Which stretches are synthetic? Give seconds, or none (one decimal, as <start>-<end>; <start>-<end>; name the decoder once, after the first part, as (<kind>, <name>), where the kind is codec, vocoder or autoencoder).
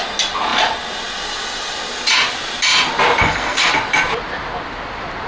3.2-3.7 (codec, SNAC)